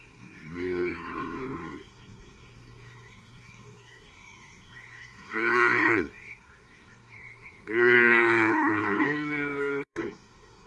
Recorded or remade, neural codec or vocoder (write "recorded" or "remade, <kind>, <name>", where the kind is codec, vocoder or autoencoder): remade, codec, SNAC